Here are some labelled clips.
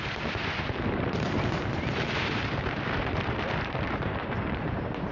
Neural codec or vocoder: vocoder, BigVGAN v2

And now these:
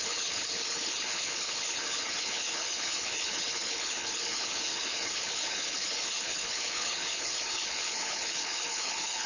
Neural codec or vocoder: codec, HILCodec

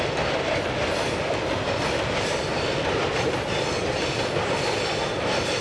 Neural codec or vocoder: none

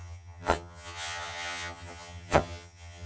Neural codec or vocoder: vocoder, HiFi-GAN